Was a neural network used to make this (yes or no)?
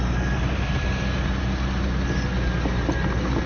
no